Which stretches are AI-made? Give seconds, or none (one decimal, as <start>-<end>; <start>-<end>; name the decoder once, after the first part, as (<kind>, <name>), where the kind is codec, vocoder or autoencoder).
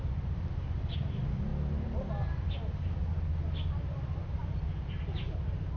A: none